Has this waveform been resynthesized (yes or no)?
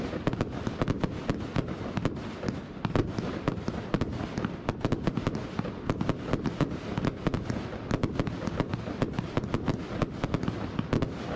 no